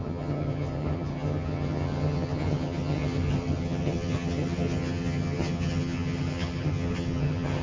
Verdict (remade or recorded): remade